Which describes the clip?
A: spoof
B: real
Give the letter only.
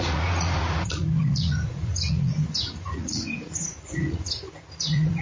A